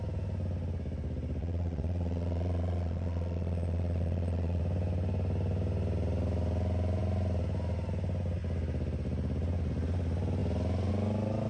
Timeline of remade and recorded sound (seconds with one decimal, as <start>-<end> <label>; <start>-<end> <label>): 0.0-1.4 recorded; 1.4-4.6 remade; 4.6-11.5 recorded